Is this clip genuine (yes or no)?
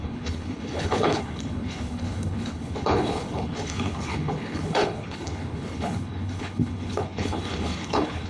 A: no